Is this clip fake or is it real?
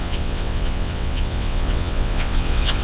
fake